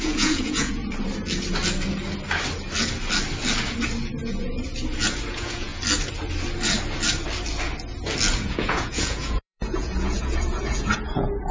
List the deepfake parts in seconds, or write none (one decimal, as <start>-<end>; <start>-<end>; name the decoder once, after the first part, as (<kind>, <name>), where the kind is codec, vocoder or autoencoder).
0.0-0.8 (vocoder, Vocos); 5.3-5.7; 8.5-11.5

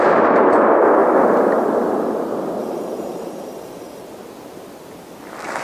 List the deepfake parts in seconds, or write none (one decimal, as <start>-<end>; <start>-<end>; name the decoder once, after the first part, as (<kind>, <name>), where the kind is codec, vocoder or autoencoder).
2.6-4.0 (vocoder, BigVGAN v2)

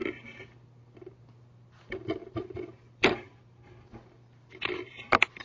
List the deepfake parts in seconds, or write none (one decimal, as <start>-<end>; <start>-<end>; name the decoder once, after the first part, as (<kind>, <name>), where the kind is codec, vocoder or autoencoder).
2.2-4.9 (vocoder, BigVGAN v2)

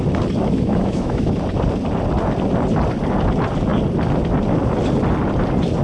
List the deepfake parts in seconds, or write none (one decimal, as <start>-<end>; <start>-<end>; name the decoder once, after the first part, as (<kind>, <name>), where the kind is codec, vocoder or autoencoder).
0.4-1.3 (autoencoder, DAC-VAE)

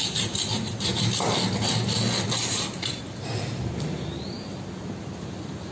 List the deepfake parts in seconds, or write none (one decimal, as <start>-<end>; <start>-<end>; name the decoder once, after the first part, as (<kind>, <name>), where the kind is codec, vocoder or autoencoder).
0.9-4.3 (vocoder, BigVGAN v2)